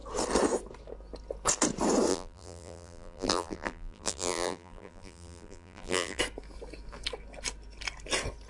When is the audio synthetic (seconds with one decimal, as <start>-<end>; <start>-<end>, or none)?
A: 2.1-6.2